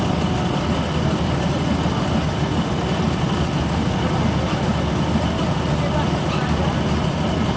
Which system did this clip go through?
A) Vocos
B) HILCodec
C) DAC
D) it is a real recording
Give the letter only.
D